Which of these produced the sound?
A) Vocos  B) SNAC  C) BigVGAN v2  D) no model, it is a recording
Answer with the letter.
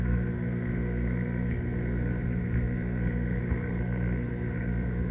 B